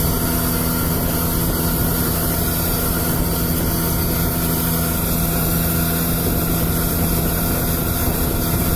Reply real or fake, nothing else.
real